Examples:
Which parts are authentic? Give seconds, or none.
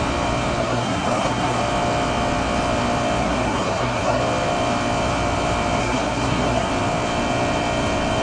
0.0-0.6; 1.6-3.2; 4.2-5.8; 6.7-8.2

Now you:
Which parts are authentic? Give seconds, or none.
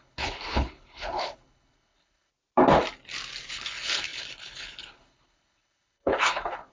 2.3-3.5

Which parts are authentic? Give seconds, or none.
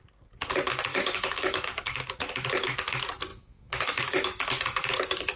0.0-0.9; 2.3-3.3; 4.4-5.4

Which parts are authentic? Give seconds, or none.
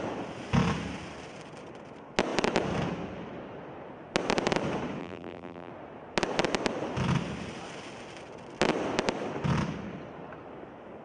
0.0-5.0; 5.7-11.0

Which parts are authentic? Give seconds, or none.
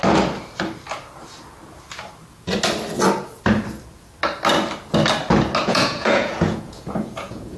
0.0-5.6